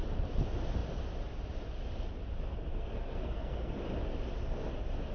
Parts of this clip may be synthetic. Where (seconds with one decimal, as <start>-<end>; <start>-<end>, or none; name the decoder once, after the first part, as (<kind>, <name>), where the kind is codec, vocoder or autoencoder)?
2.7-3.8 (codec, SNAC)